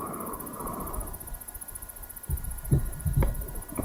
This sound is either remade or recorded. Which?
recorded